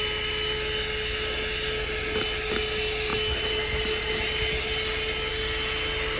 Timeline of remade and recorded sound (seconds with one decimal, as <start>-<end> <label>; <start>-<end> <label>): 0.0-6.2 recorded